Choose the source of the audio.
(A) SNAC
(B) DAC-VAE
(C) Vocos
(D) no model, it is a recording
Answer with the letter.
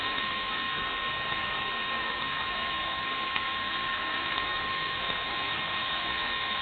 A